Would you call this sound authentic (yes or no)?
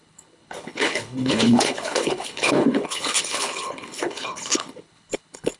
no